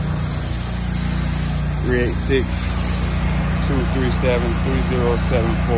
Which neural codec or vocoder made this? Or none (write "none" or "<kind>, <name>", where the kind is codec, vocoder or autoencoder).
none